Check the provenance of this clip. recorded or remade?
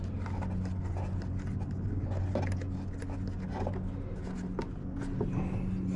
recorded